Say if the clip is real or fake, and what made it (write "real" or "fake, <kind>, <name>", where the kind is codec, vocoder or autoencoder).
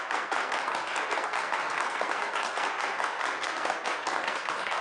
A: fake, codec, SNAC